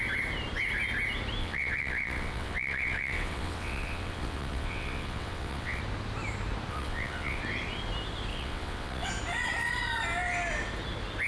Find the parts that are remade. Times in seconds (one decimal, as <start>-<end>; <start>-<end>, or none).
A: 1.4-5.8; 6.7-7.4; 8.3-9.1